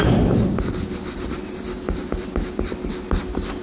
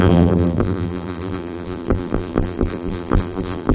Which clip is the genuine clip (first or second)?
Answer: first